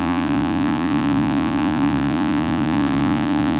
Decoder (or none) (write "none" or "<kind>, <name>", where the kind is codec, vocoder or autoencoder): vocoder, Vocos